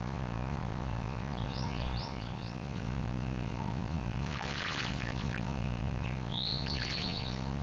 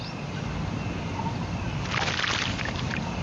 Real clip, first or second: second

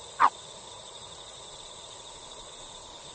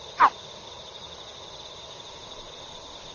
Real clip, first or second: second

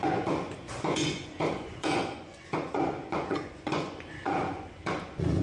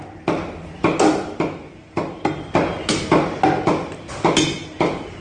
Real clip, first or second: second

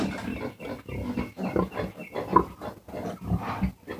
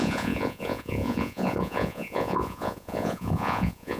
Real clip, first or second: first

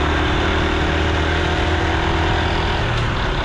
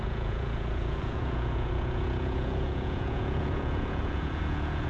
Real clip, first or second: first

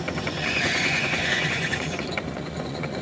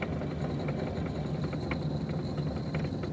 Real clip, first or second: second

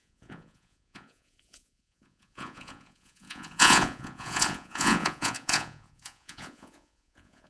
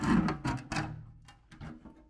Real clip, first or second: second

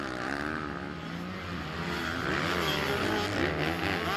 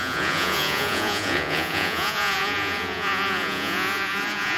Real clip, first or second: first